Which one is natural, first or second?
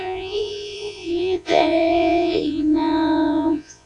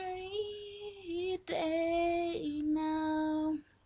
second